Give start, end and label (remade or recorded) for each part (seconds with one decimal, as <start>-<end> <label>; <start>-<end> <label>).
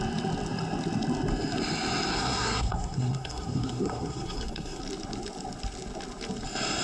0.0-2.1 recorded; 2.1-4.8 remade; 4.8-6.8 recorded